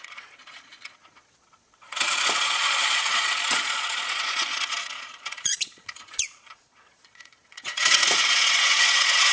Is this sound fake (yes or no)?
yes